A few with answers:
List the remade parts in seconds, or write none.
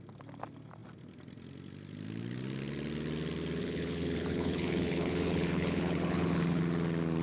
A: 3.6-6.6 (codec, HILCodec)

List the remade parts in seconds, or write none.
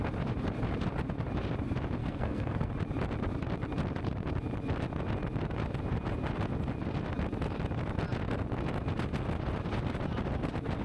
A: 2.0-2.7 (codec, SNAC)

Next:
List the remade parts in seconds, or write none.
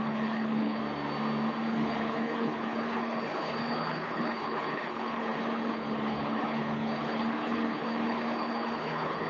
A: 0.0-0.8 (codec, HILCodec); 1.7-9.3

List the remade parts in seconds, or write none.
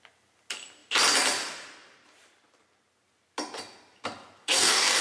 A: 4.4-5.0 (codec, DAC)